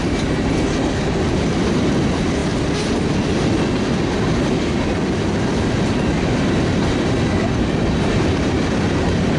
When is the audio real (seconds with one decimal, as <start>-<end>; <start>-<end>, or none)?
0.0-9.4